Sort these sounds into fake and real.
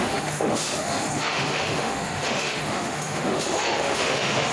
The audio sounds fake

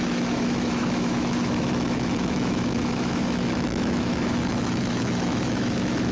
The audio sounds fake